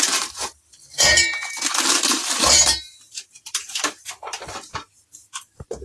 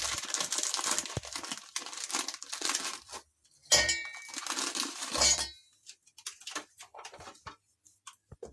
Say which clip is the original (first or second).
second